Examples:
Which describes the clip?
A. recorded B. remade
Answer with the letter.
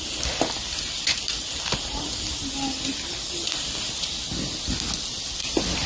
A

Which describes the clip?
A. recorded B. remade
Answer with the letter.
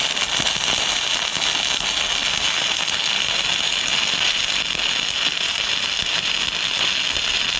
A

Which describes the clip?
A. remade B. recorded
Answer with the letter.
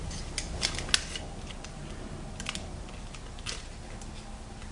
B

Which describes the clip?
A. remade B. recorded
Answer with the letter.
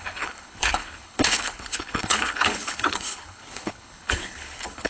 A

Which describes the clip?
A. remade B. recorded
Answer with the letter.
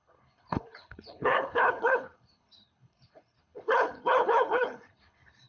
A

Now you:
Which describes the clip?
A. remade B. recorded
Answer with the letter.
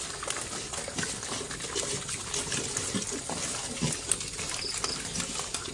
B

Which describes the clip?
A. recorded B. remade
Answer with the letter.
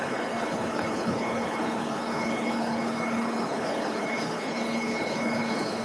B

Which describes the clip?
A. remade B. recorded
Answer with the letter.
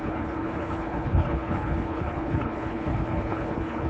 A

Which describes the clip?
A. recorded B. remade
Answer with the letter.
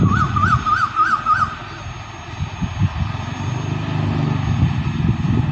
A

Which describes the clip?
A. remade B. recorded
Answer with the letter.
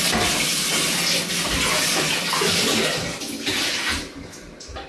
B